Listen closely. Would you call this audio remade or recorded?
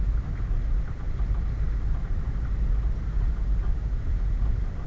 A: remade